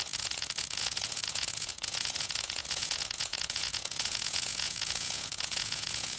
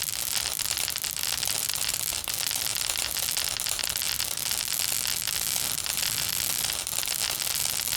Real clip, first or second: second